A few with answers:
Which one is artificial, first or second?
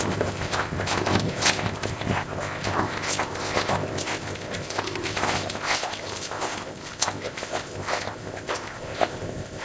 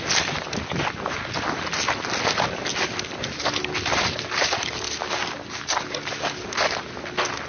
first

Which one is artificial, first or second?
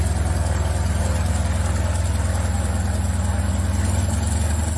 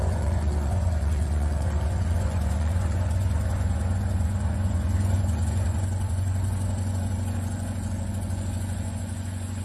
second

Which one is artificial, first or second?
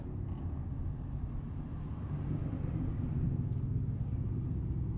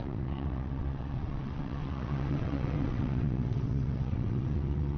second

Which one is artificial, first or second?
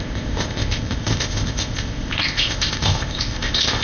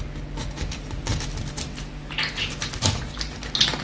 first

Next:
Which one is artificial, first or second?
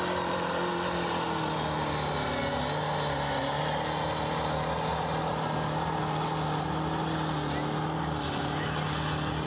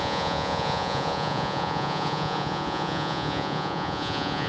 second